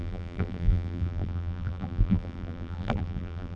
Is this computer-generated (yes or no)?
yes